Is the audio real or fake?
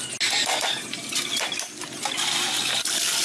real